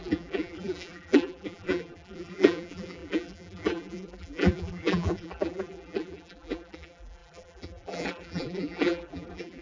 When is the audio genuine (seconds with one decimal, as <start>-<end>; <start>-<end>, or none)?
none

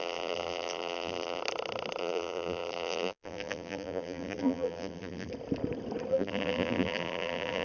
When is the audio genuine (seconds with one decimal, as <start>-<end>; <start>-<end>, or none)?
1.4-2.0; 5.3-6.1

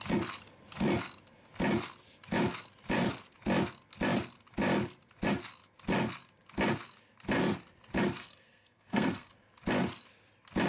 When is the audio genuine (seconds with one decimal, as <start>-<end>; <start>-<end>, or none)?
0.0-8.2; 9.3-10.7

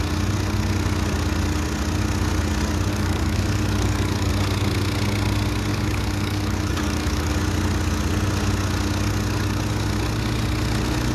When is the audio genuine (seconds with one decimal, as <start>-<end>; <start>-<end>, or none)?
0.0-2.9; 4.3-5.7; 7.3-11.1

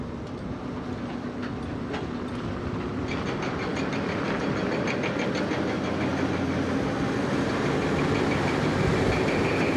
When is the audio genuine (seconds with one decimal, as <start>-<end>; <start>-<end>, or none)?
0.0-9.8